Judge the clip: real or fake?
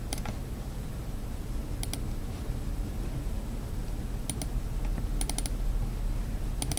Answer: real